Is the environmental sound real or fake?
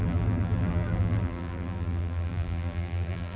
fake